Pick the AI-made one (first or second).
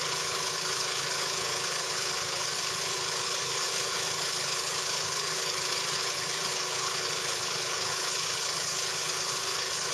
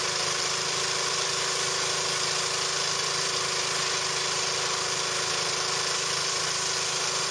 first